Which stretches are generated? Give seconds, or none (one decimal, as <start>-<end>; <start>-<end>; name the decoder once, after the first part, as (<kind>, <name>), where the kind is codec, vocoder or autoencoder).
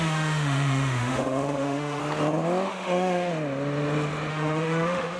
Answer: 0.0-2.0 (autoencoder, DAC-VAE); 2.7-3.3; 4.3-5.2